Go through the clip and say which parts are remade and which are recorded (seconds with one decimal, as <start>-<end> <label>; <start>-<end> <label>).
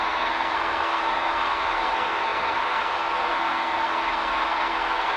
0.0-5.2 remade